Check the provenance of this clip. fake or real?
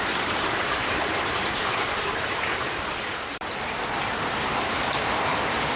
fake